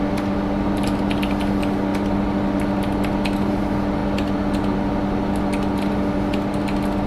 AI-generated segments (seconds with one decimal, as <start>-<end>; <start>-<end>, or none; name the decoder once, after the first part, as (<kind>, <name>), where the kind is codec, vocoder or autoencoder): none